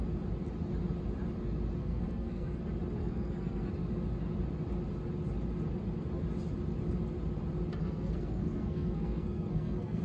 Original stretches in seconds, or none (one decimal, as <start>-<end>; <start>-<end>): 0.0-1.8; 2.6-3.0; 3.7-7.8